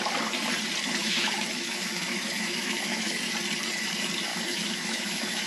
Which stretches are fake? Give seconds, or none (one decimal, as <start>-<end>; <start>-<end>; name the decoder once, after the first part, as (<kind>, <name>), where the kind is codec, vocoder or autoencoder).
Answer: 1.0-3.2 (autoencoder, DAC-VAE); 4.3-5.5